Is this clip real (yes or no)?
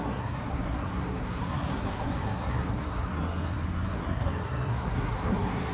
no